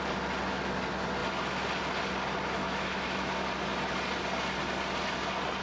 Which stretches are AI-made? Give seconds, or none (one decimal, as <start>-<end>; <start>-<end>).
2.6-3.3